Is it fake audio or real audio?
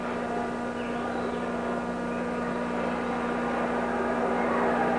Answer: real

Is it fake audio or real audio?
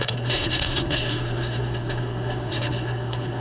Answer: fake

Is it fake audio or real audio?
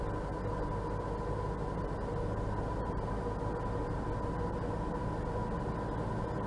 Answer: real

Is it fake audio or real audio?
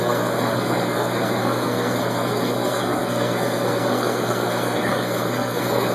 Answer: fake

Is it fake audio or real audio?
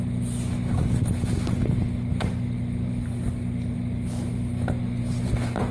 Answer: real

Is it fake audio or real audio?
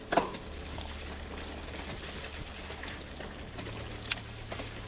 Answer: real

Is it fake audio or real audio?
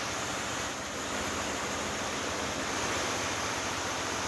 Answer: real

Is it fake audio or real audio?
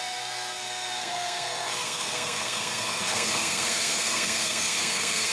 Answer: fake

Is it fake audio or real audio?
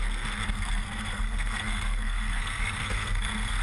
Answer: fake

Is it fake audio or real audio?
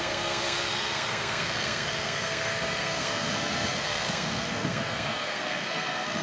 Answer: fake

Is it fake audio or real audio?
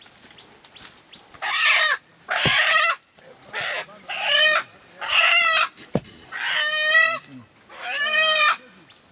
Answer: real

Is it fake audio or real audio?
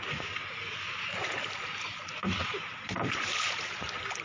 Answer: real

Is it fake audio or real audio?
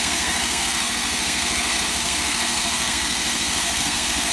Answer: fake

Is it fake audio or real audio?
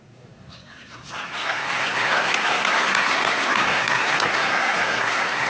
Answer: fake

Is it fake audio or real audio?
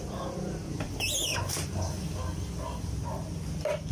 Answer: real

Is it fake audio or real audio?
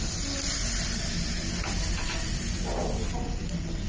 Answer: real